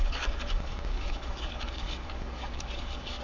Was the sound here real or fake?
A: fake